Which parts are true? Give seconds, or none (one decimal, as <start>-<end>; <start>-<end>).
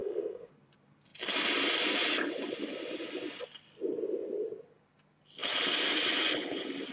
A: 0.5-6.9